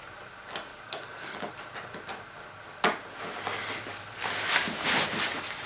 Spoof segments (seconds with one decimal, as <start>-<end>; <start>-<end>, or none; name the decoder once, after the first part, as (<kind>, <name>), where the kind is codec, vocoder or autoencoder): 0.7-1.5 (codec, DAC)